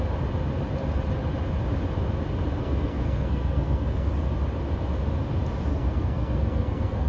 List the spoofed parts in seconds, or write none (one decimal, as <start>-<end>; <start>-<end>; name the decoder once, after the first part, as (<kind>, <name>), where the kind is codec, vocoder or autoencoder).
2.6-4.1 (codec, SNAC); 5.7-7.1